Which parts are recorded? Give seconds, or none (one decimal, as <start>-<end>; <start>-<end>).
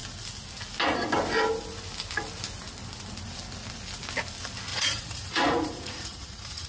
0.0-4.7